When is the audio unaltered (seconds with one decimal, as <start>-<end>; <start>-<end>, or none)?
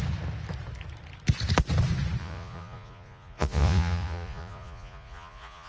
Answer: 0.0-2.2